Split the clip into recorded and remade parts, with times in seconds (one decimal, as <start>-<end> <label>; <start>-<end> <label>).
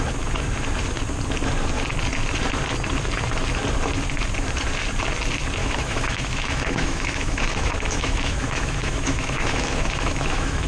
0.0-5.6 recorded; 5.6-10.7 remade